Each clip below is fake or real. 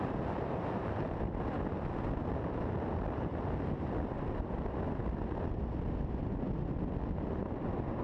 real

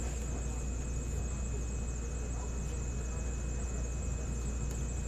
real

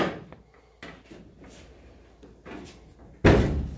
real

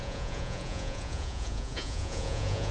fake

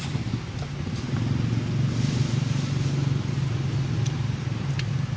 real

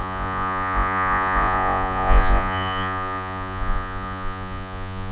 fake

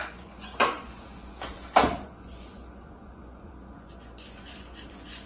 fake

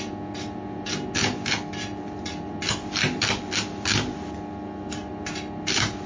real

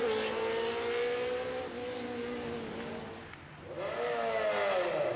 real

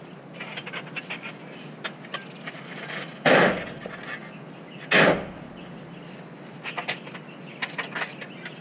real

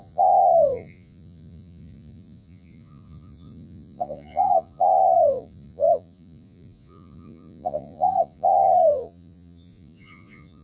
fake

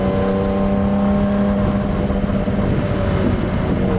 real